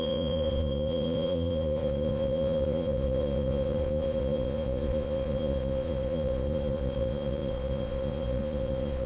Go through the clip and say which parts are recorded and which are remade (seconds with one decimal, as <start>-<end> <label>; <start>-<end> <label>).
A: 0.0-9.1 remade